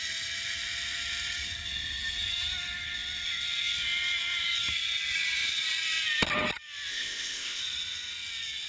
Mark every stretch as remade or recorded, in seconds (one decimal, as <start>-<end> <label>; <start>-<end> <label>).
0.0-6.9 recorded; 6.9-7.6 remade; 7.6-8.7 recorded